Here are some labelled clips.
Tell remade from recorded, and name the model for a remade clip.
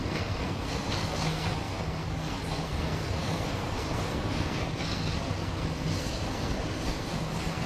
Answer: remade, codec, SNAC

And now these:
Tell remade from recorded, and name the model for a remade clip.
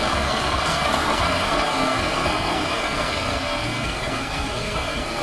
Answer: remade, codec, SNAC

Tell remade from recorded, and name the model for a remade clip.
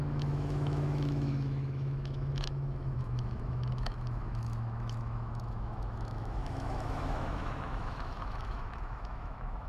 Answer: remade, autoencoder, DAC-VAE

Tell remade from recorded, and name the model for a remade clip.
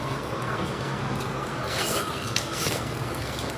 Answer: remade, codec, SNAC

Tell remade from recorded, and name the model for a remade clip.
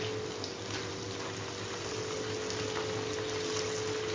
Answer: recorded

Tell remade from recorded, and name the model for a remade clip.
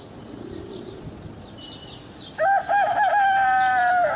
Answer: recorded